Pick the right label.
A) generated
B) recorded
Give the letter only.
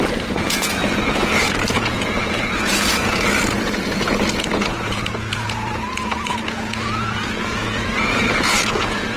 A